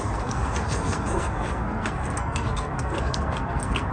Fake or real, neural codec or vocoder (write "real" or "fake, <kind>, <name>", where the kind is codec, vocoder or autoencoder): fake, codec, SNAC